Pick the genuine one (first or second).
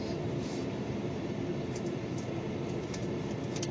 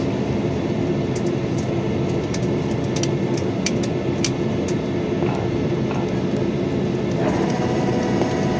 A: second